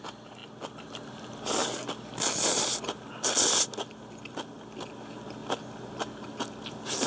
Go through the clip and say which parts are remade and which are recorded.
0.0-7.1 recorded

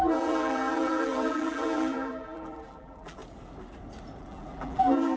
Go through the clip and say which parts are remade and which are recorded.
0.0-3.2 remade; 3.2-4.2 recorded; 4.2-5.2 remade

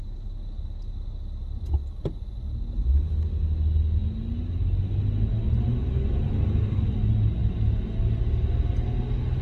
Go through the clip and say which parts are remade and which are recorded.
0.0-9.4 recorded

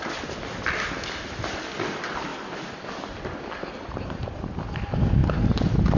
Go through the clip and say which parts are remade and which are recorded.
0.0-2.3 recorded; 2.3-4.2 remade; 4.2-6.0 recorded

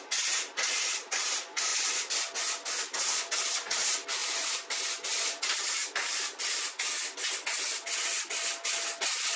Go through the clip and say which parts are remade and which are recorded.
0.0-4.2 recorded; 4.2-4.8 remade; 4.8-5.8 recorded; 5.8-6.4 remade; 6.4-9.4 recorded